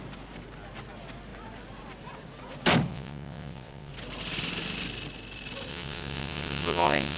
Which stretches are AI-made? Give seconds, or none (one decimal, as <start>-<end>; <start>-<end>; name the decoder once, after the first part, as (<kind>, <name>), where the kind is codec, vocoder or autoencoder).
2.9-3.9 (vocoder, WaveNeXt); 5.7-7.2